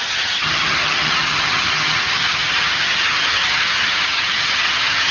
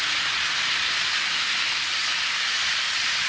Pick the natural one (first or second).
second